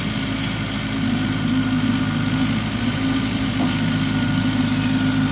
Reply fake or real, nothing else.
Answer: real